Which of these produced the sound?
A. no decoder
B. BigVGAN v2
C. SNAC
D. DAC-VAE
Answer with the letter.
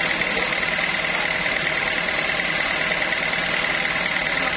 A